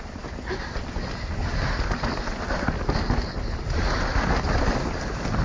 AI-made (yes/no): no